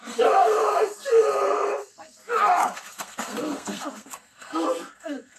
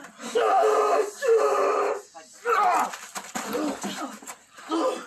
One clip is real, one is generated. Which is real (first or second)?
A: second